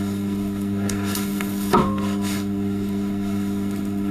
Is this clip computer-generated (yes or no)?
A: yes